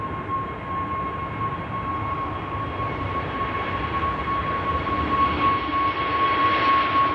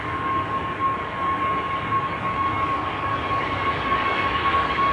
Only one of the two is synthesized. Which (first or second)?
second